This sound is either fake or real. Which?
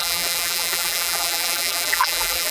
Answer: fake